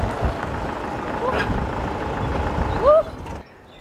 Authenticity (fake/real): real